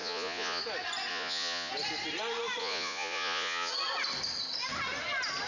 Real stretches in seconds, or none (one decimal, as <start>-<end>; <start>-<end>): 0.6-1.1; 1.7-2.6; 3.7-5.5